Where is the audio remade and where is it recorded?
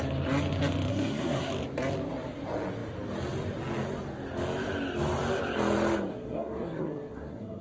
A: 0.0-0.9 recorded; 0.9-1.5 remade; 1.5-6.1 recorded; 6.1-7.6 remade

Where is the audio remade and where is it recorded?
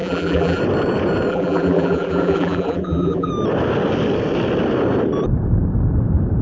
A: 0.0-0.6 remade; 0.6-1.3 recorded; 1.3-3.3 remade; 3.3-6.4 recorded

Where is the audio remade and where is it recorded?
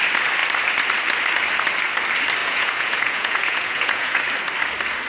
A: 0.0-2.4 recorded; 2.4-4.2 remade; 4.2-5.1 recorded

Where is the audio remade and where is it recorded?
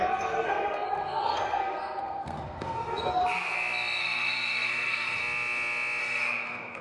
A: 0.0-3.2 remade; 3.2-4.0 recorded; 4.0-5.2 remade; 5.2-6.0 recorded; 6.0-6.8 remade